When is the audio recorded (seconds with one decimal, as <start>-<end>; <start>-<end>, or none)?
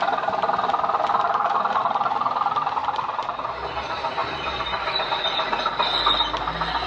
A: 0.0-2.8; 3.5-4.2; 5.1-6.9